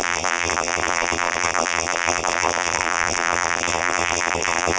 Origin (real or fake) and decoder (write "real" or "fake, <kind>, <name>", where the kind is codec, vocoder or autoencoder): fake, vocoder, BigVGAN v2